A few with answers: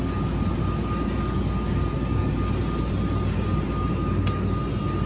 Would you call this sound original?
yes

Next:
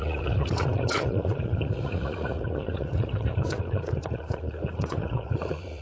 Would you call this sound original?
no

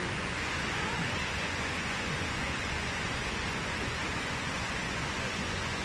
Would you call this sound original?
no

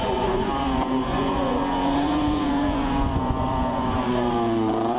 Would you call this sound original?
no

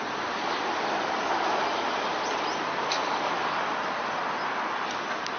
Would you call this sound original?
yes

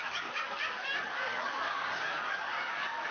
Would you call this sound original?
no